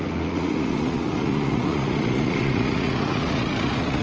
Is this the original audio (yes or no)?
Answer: no